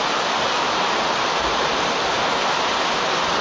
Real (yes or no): yes